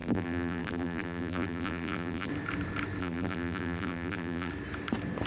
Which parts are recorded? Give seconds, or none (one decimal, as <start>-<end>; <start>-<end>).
2.3-3.0; 4.5-5.3